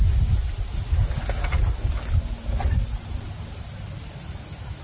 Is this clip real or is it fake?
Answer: real